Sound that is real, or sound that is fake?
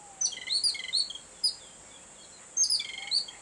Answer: real